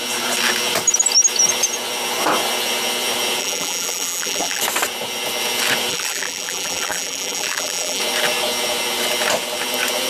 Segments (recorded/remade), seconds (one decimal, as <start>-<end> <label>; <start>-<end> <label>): 0.0-3.4 recorded; 3.4-4.6 remade; 4.6-5.9 recorded; 5.9-8.0 remade; 8.0-10.1 recorded